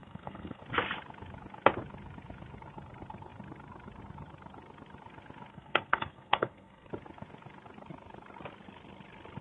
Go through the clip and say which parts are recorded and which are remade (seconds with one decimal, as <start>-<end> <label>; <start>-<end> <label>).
0.0-0.6 remade; 0.6-5.5 recorded; 5.5-6.9 remade; 6.9-9.4 recorded

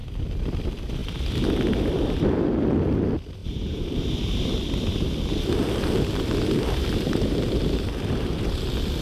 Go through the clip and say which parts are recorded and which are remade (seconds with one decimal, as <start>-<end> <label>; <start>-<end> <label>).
0.0-0.6 remade; 0.6-1.0 recorded; 1.0-1.6 remade; 1.6-3.4 recorded; 3.4-8.5 remade; 8.5-9.0 recorded

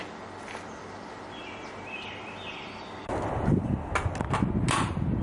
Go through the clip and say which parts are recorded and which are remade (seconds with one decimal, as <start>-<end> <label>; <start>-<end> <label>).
0.0-5.2 recorded

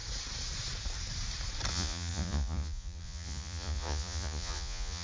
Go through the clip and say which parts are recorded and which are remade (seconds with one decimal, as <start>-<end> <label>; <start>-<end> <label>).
0.0-1.7 recorded; 1.7-5.0 remade

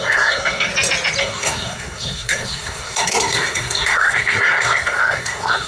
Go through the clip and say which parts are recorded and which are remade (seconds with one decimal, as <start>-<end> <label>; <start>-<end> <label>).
0.0-0.7 remade; 0.7-1.2 recorded; 1.2-5.7 remade